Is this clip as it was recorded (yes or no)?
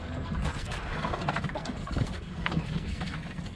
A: no